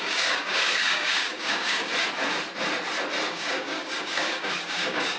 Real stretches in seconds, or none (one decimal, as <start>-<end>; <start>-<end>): 1.9-3.3